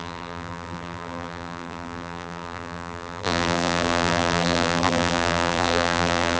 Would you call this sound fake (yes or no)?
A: yes